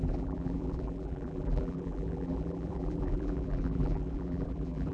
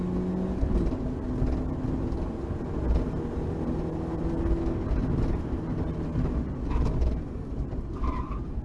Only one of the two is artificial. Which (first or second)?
first